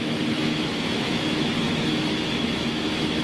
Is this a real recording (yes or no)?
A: no